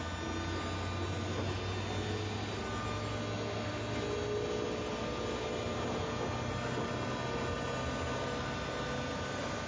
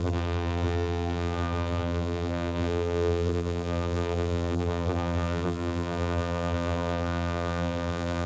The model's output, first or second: second